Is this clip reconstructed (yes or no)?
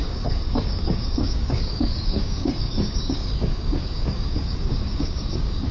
yes